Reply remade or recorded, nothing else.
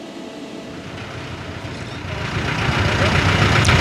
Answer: recorded